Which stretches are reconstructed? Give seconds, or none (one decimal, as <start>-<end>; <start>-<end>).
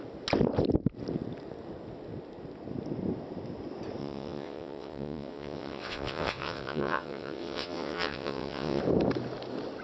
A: 4.0-8.8